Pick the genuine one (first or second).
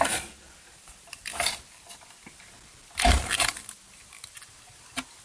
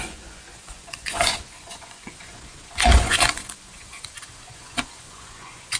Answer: first